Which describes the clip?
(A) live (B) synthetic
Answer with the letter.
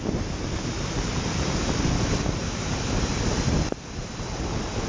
A